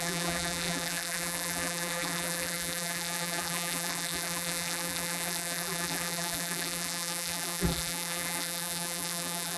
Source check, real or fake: fake